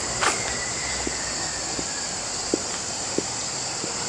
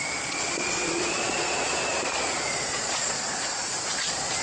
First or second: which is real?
first